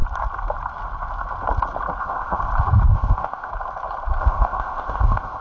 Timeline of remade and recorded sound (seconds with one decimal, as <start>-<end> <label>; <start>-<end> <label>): 0.0-2.0 recorded; 2.0-2.4 remade; 2.4-2.9 recorded; 2.9-3.5 remade; 3.5-4.2 recorded; 4.2-5.4 remade